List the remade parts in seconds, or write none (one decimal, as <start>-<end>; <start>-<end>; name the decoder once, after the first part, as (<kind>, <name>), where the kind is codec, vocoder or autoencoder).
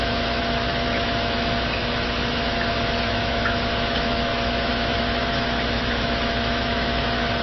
0.0-7.4 (autoencoder, DAC-VAE)